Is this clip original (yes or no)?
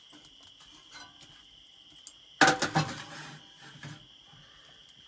yes